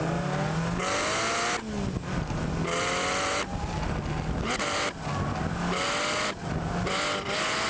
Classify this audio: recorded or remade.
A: recorded